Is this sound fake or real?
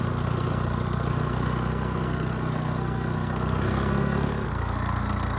fake